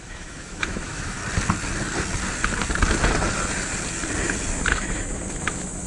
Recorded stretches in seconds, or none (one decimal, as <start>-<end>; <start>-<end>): 1.2-4.7